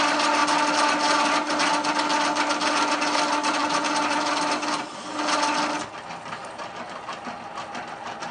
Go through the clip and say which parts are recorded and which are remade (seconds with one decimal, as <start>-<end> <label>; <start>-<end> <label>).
0.0-8.3 recorded